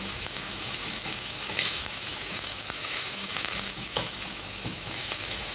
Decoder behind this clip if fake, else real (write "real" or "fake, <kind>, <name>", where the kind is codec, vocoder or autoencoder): fake, autoencoder, DAC-VAE